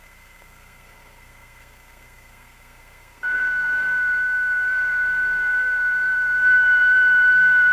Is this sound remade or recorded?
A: remade